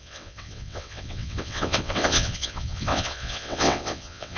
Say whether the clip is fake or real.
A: fake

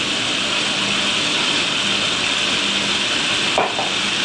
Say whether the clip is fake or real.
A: real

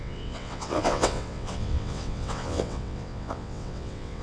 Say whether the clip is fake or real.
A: fake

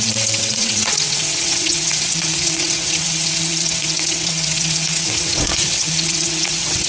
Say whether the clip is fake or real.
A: fake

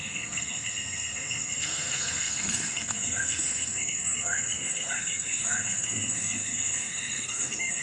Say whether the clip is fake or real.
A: fake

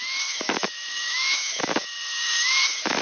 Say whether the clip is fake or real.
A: fake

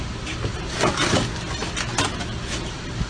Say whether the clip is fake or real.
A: real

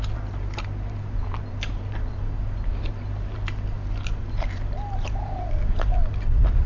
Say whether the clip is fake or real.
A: fake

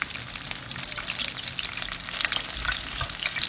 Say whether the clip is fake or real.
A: real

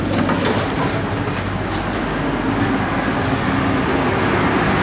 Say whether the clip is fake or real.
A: real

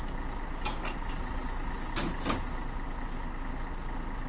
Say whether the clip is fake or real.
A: real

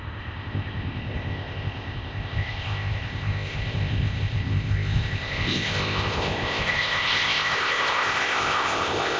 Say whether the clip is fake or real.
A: fake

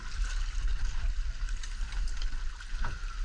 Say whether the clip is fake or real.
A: real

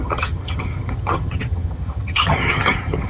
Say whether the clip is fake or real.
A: fake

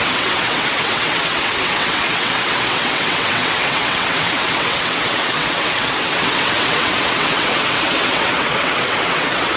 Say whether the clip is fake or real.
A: fake